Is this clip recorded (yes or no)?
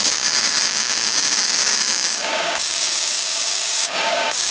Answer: no